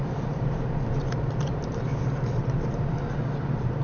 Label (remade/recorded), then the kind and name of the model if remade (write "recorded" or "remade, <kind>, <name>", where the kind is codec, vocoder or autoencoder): remade, vocoder, BigVGAN v2